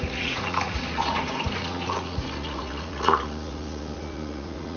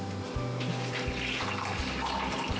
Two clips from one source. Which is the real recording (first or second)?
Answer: second